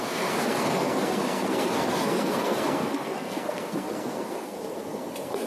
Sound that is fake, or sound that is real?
fake